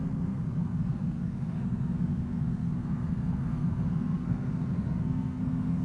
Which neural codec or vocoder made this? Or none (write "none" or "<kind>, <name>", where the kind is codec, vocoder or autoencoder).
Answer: codec, SNAC